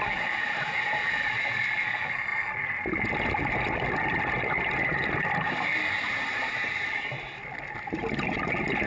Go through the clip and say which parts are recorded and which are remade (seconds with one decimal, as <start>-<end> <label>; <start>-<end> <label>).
0.0-8.9 recorded